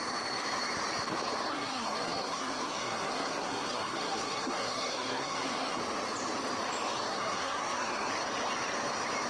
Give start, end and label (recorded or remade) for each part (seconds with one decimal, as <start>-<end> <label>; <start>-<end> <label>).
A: 0.0-1.5 recorded; 1.5-5.8 remade; 5.8-7.1 recorded; 7.1-8.1 remade; 8.1-9.3 recorded